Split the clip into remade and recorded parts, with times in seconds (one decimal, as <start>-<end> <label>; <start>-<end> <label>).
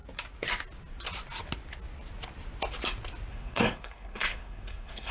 0.0-3.3 recorded; 3.3-5.1 remade